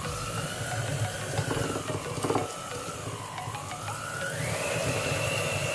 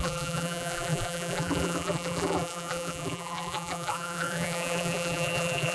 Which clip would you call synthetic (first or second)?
second